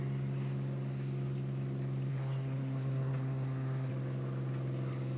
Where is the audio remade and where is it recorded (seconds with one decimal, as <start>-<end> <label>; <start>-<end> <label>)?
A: 0.0-2.1 recorded; 2.1-3.9 remade; 3.9-5.2 recorded